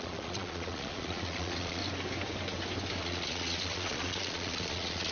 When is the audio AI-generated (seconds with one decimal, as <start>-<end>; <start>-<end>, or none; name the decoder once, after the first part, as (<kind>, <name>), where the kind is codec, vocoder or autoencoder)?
0.0-1.8 (vocoder, Vocos); 3.0-5.1